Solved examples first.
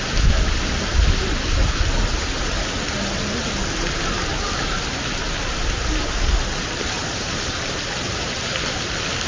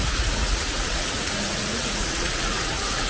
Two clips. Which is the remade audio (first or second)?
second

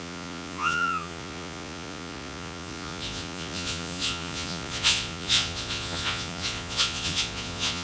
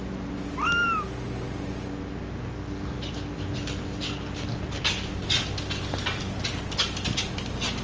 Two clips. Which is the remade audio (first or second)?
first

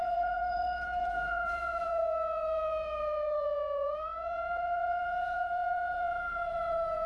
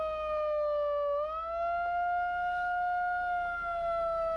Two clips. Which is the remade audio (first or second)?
first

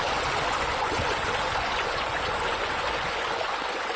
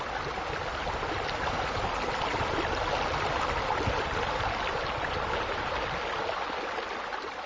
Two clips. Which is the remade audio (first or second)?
first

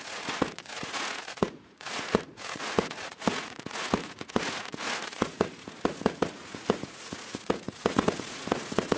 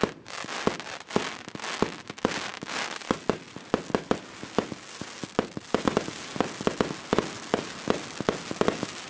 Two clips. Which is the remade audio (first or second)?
first